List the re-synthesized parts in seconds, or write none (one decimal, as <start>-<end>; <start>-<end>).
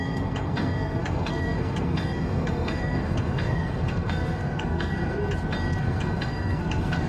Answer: 0.0-5.2; 5.8-7.1